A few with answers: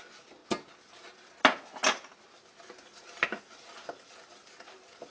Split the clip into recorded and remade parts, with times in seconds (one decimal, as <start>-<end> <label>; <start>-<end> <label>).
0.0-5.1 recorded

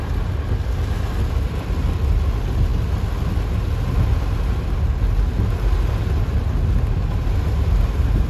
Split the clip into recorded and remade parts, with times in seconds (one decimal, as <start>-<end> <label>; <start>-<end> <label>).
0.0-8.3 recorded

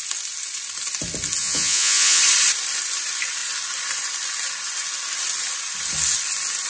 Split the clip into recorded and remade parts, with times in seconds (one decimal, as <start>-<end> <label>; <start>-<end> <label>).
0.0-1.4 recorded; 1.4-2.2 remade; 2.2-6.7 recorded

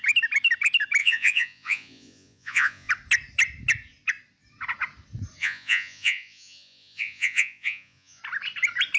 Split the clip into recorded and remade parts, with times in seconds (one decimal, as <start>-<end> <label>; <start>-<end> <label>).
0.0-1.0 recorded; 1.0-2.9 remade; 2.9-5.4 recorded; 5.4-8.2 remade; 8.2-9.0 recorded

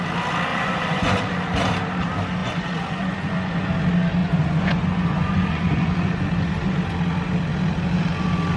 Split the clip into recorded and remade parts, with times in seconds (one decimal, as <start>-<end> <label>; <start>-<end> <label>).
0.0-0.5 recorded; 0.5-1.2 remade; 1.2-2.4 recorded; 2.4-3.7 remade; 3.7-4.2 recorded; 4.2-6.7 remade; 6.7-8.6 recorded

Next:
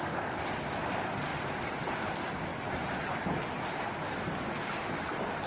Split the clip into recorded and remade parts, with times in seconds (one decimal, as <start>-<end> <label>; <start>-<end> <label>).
0.0-5.5 recorded

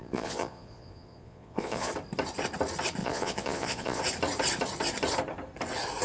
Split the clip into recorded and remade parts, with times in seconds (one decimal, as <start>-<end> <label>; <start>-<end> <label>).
0.0-1.9 remade; 1.9-3.0 recorded; 3.0-4.0 remade; 4.0-6.0 recorded